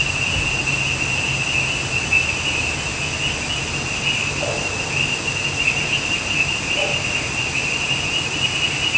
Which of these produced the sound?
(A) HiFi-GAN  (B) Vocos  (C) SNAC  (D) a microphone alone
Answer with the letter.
D